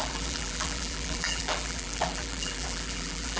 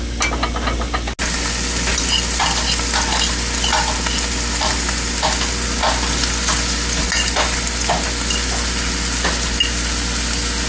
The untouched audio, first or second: second